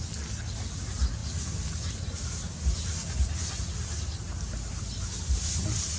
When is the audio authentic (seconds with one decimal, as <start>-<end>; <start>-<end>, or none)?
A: 0.0-6.0